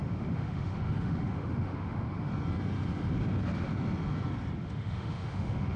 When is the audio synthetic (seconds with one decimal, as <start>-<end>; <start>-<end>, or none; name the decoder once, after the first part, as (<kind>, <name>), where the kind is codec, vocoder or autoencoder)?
0.0-2.3 (autoencoder, DAC-VAE); 4.6-5.8

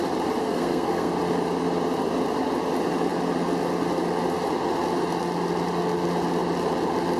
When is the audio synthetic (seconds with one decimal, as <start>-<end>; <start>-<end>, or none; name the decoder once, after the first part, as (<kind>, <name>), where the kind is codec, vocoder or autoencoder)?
0.4-1.1 (codec, SNAC)

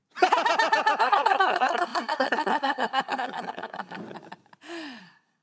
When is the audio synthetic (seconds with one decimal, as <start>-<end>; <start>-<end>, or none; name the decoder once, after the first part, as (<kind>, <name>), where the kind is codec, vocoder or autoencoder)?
1.0-4.0 (codec, SNAC); 5.0-5.4

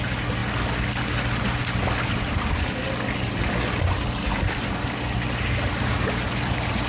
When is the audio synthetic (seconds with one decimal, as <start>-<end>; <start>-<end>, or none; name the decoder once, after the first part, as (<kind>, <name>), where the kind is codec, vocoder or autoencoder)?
none

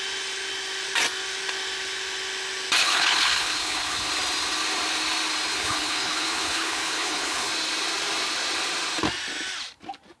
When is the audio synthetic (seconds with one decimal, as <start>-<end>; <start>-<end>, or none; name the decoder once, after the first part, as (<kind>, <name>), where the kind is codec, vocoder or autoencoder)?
2.8-4.1 (codec, HILCodec); 5.5-7.5

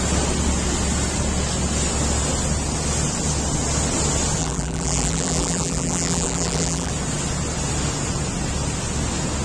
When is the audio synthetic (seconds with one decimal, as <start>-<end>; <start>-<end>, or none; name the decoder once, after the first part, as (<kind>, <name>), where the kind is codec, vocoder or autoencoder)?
4.4-6.9 (vocoder, BigVGAN v2)